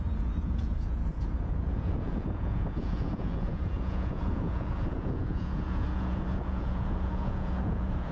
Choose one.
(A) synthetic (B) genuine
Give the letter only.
A